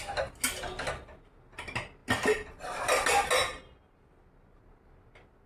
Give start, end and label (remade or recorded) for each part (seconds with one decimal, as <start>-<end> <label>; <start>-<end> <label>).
0.0-5.5 recorded